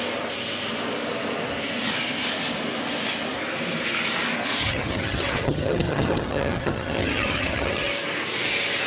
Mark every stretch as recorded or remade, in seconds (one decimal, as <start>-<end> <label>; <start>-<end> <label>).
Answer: 0.0-4.6 recorded; 4.6-7.9 remade; 7.9-8.9 recorded